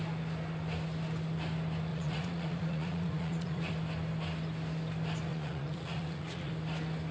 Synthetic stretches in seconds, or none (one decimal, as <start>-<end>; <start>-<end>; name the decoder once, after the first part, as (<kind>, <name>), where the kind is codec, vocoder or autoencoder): 1.9-3.7 (vocoder, Vocos); 5.3-6.5